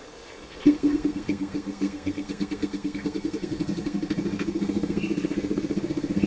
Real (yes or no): no